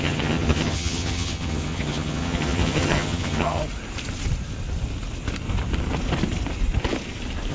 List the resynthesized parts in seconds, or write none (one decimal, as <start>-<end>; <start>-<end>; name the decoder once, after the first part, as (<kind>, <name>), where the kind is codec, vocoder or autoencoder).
0.0-3.6 (vocoder, HiFi-GAN)